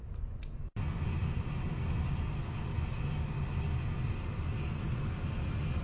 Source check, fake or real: real